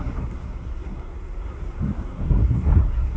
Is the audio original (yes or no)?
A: no